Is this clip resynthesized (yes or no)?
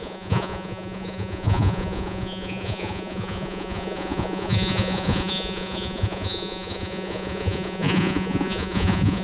yes